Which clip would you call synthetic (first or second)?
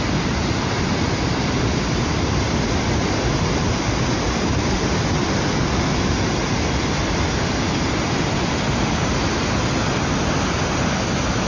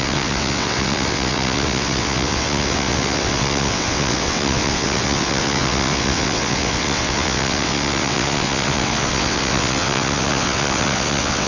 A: second